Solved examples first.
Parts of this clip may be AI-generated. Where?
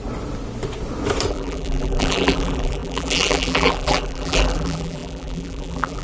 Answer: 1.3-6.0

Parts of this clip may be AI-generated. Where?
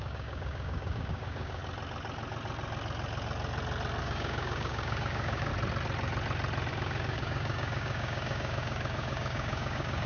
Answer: 0.0-1.6; 4.0-5.5; 6.7-10.1